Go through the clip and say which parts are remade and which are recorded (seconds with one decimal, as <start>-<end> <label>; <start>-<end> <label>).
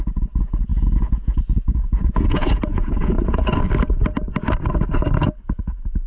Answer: 0.0-0.7 recorded; 0.7-3.4 remade; 3.4-6.1 recorded